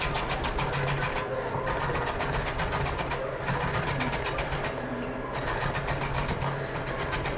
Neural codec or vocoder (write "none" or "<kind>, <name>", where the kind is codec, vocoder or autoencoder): none